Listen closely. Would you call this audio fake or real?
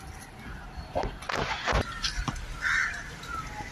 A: real